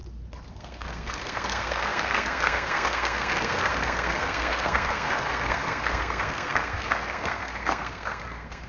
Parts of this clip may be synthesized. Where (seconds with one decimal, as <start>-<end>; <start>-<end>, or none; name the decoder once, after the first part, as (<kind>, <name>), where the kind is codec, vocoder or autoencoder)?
0.5-8.7 (codec, SNAC)